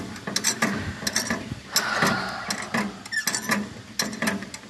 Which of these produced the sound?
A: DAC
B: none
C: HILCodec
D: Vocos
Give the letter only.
B